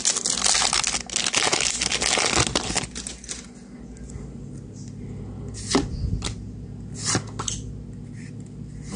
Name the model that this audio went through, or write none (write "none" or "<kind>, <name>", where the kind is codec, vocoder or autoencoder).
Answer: none